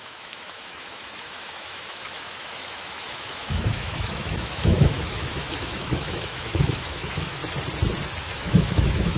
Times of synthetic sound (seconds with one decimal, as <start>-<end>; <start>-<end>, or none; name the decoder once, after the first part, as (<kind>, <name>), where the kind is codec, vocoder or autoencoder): 0.0-7.4 (autoencoder, DAC-VAE); 8.2-9.2